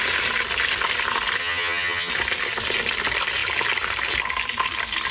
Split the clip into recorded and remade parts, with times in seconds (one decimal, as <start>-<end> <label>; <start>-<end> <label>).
0.0-1.4 recorded; 1.4-2.1 remade; 2.1-5.1 recorded